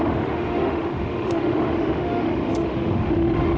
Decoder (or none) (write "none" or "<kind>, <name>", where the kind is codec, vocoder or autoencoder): autoencoder, DAC-VAE